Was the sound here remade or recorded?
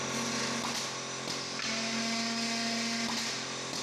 recorded